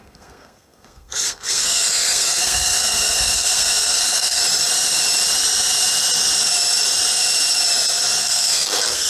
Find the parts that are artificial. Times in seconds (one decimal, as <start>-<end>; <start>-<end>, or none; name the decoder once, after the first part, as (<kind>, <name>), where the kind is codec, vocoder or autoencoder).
0.0-4.4 (codec, SNAC); 8.2-9.1